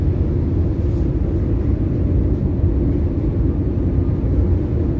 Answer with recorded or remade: recorded